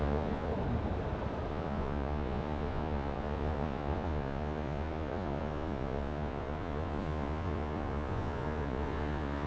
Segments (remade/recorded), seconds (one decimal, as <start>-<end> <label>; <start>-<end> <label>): 0.0-0.5 remade; 0.5-1.5 recorded; 1.5-9.5 remade